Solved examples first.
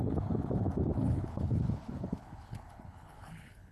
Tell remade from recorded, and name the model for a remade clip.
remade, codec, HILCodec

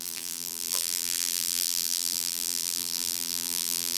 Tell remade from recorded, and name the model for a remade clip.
remade, vocoder, BigVGAN v2